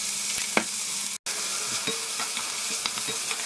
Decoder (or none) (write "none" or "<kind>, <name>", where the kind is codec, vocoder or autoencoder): none